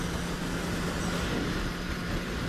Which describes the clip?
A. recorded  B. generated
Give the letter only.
A